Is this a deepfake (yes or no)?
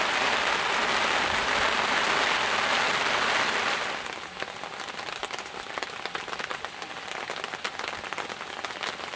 no